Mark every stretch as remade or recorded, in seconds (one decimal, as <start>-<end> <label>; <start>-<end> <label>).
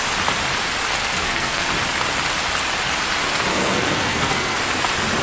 0.0-1.0 recorded; 1.0-1.7 remade; 1.7-3.5 recorded; 3.5-4.6 remade; 4.6-5.2 recorded